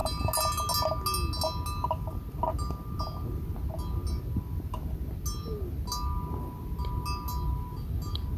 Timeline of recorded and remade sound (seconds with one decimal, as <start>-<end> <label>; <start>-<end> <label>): 0.0-8.4 recorded